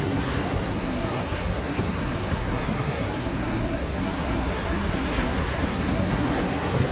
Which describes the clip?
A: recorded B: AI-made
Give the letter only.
B